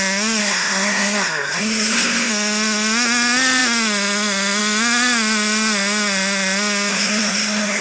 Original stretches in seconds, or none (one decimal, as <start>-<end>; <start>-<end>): 0.0-0.4; 2.3-6.9